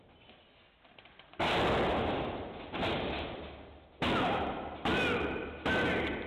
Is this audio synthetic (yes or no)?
no